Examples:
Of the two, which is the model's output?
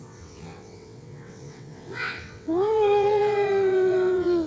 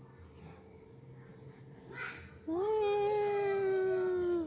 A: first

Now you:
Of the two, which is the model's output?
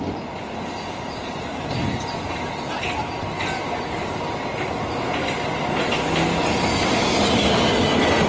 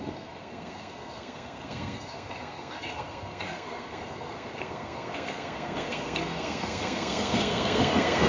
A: second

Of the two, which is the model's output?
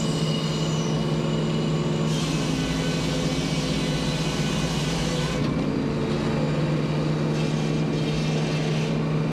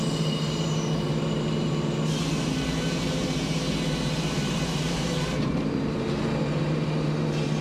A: second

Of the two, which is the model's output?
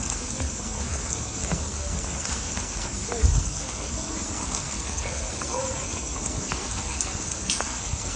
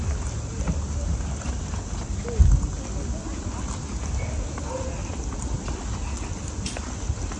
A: first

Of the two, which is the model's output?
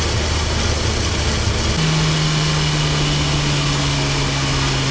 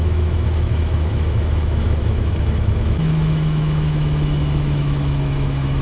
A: second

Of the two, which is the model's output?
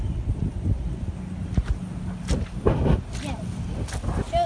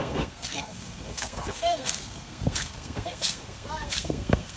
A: second